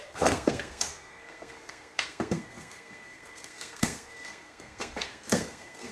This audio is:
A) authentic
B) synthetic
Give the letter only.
B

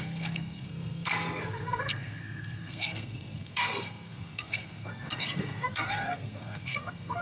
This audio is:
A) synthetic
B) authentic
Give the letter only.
A